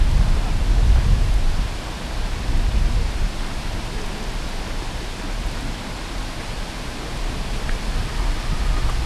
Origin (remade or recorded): recorded